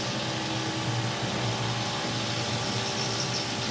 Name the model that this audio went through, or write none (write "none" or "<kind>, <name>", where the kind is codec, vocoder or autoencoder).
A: none